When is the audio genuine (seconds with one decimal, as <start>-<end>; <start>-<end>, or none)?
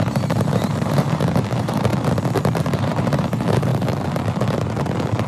1.9-2.7; 3.7-5.3